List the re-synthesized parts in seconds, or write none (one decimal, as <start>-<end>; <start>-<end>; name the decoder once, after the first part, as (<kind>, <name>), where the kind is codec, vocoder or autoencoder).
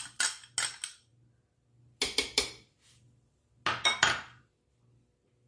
none